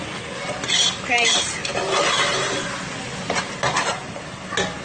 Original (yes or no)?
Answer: yes